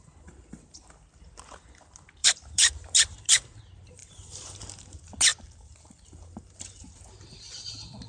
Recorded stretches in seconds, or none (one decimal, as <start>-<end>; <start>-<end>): 0.0-2.2; 3.6-4.0; 4.6-8.1